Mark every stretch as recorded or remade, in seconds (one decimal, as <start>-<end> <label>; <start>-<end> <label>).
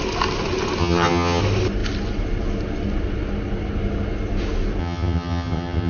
0.0-0.8 recorded; 0.8-1.4 remade; 1.4-4.8 recorded; 4.8-5.9 remade